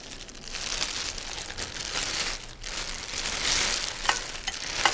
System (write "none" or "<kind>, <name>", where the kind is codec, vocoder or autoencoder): none